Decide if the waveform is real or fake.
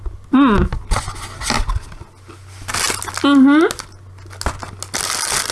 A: real